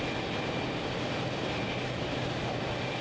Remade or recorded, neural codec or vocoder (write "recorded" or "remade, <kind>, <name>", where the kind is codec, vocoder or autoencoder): remade, vocoder, BigVGAN v2